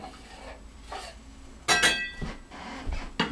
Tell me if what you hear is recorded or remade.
recorded